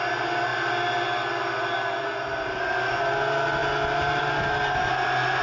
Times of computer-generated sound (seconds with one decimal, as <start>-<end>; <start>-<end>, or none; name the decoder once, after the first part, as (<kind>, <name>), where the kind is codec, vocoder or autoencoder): none